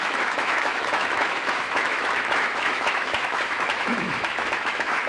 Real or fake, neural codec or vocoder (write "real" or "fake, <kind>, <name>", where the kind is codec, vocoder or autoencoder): fake, autoencoder, DAC-VAE